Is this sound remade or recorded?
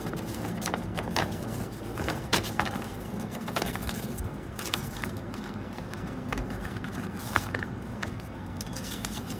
remade